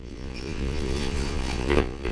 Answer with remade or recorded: remade